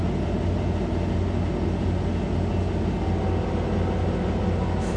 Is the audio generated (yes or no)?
no